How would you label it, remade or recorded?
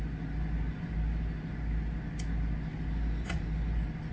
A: recorded